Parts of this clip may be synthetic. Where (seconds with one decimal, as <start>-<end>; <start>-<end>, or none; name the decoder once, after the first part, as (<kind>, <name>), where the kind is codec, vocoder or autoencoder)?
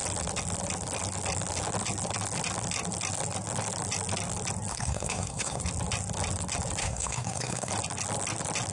4.7-5.6 (codec, SNAC); 6.8-7.7